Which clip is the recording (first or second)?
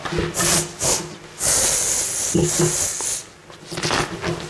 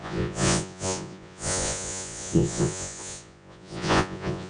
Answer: first